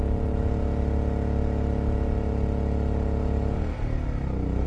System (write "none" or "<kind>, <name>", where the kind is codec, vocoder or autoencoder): none